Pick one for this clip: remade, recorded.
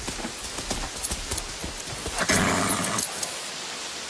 recorded